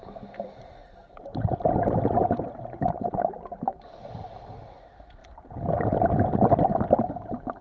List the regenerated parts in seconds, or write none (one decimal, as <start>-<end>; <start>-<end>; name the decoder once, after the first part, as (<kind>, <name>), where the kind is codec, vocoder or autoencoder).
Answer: 0.8-1.7 (vocoder, BigVGAN v2)